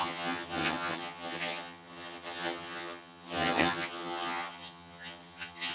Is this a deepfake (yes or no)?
yes